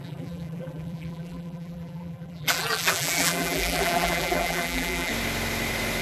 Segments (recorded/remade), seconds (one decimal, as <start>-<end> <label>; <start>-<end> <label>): 0.0-5.1 remade; 5.1-6.0 recorded